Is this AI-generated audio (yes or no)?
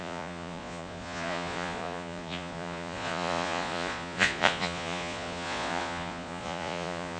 yes